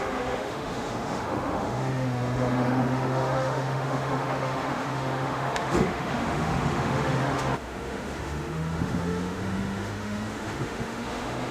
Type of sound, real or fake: fake